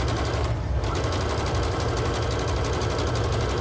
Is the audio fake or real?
real